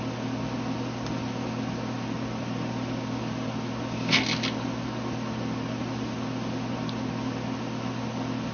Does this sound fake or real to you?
real